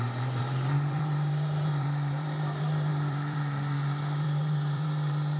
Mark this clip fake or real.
fake